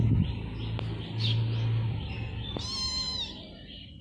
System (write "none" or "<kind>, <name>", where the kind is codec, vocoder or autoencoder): none